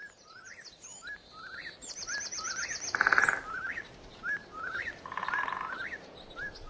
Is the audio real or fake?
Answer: real